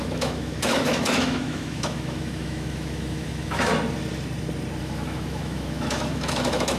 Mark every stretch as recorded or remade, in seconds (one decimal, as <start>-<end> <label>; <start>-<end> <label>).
0.0-3.7 remade; 3.7-4.8 recorded; 4.8-6.8 remade